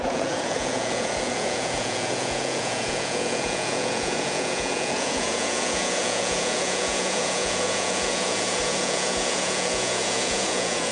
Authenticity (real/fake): fake